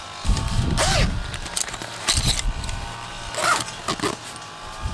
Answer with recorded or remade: recorded